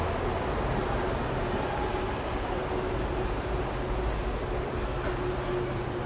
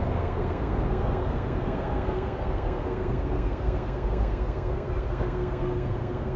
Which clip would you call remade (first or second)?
second